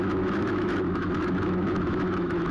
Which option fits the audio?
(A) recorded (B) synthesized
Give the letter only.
B